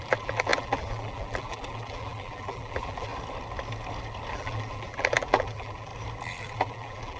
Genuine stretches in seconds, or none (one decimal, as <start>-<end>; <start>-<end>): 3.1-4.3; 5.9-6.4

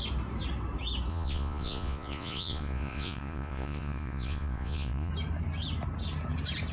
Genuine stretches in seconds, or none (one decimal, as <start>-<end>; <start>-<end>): 0.0-1.1; 5.1-6.7

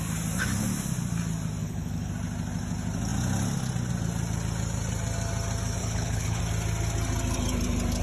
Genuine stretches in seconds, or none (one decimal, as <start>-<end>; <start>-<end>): 0.0-1.6; 2.1-5.8; 6.4-8.0

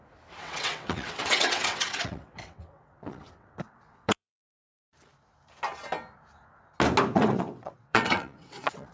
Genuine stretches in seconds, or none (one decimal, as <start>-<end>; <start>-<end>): 0.0-0.4; 4.8-7.1

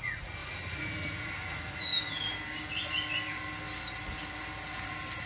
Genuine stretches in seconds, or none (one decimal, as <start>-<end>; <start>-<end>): 1.9-5.3